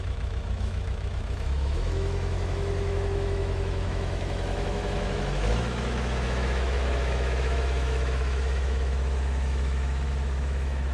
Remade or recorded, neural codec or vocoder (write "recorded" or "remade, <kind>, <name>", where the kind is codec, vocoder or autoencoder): remade, autoencoder, DAC-VAE